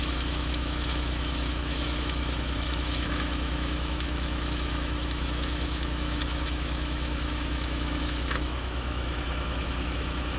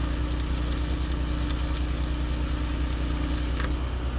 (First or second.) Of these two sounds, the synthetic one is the first